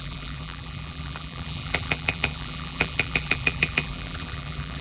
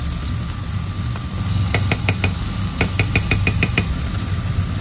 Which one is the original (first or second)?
second